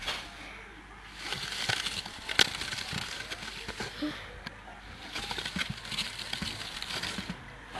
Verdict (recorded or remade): recorded